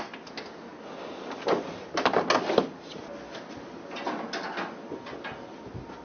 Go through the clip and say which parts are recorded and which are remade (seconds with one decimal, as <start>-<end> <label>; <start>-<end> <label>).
0.0-6.0 recorded